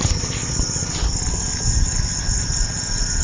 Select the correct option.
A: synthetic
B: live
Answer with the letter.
B